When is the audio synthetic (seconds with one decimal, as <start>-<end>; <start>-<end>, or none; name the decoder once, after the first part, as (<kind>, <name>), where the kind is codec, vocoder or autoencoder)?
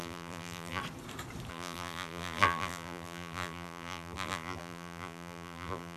0.0-0.8 (vocoder, BigVGAN v2); 1.5-6.0